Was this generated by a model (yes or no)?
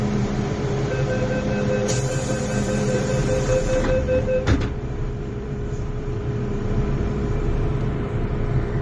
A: yes